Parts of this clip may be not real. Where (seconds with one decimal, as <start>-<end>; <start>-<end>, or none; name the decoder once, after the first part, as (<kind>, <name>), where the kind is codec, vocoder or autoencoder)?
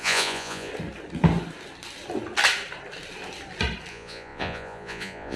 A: 0.0-0.7 (vocoder, Vocos); 3.9-5.4